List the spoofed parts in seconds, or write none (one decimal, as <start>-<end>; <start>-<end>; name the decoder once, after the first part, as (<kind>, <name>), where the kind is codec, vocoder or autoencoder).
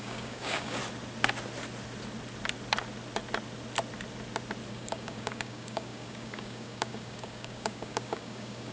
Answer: 0.0-0.8 (codec, DAC); 4.7-8.7